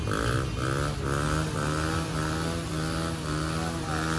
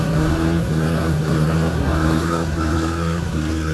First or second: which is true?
first